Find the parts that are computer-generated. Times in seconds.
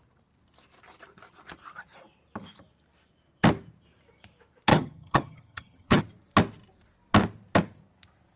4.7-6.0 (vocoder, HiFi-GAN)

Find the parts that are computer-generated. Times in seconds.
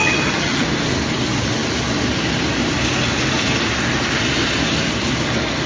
0.0-0.6 (vocoder, HiFi-GAN)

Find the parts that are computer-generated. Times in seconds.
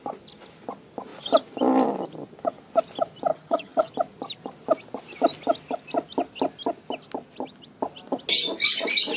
3.3-3.9 (vocoder, HiFi-GAN)